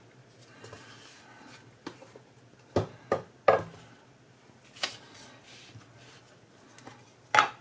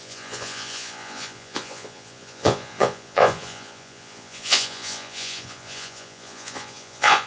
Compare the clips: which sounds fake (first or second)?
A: second